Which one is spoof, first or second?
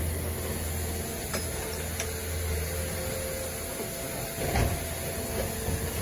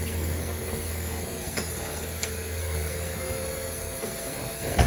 second